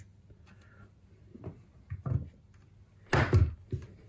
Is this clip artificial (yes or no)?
no